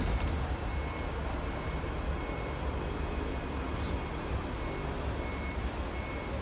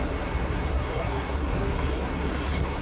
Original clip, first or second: first